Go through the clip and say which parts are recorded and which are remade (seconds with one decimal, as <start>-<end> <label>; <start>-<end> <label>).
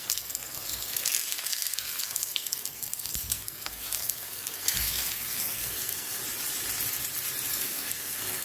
0.0-6.2 remade; 6.2-7.5 recorded; 7.5-8.4 remade